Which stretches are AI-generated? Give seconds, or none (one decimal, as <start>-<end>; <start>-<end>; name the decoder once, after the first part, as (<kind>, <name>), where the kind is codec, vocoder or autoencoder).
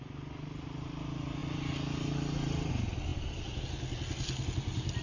none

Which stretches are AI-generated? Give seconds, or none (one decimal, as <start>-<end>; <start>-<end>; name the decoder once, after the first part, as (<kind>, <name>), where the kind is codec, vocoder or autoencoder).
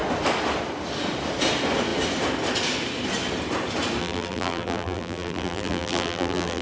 4.0-6.6 (vocoder, BigVGAN v2)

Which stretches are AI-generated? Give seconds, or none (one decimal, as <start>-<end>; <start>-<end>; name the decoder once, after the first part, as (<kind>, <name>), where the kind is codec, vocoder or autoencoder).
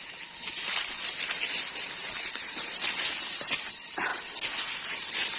2.0-2.7 (vocoder, Vocos)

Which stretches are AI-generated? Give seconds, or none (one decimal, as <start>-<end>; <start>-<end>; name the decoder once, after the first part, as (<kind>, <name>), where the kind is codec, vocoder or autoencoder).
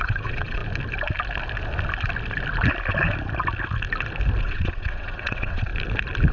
0.0-0.6 (vocoder, WaveNeXt); 4.4-5.7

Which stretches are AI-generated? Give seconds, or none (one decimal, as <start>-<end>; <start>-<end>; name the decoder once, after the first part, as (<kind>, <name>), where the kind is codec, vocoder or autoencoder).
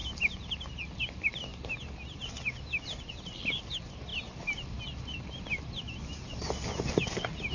none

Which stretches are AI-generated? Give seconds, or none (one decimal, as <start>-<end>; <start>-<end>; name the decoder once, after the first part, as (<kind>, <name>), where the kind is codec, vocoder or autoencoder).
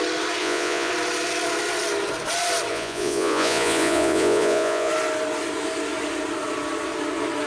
0.4-0.9 (vocoder, Vocos); 2.7-4.9